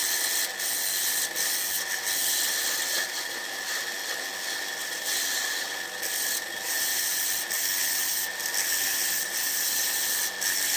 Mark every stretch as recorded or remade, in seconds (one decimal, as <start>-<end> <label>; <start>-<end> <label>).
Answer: 0.0-10.8 recorded